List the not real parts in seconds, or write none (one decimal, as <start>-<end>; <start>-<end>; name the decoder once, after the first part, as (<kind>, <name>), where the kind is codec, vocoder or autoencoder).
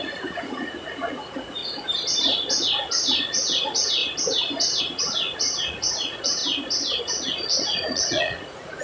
0.0-1.6 (vocoder, Vocos); 2.6-4.0; 4.8-6.4; 7.0-8.8